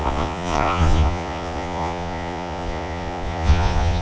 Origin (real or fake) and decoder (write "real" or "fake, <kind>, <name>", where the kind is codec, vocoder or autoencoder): fake, vocoder, Vocos